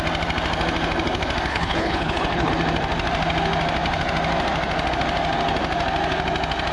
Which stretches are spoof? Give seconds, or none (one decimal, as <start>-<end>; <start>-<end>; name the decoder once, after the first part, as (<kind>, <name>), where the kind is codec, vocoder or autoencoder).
1.5-2.5 (codec, HILCodec)

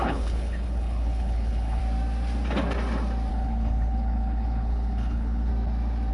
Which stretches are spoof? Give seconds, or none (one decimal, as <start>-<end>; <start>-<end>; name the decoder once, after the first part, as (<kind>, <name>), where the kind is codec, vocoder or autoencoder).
0.0-1.8 (codec, HILCodec); 3.3-5.5